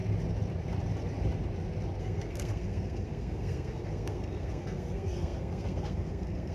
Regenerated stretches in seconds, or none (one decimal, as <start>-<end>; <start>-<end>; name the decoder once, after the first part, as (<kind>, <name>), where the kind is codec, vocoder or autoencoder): 2.0-6.5 (codec, SNAC)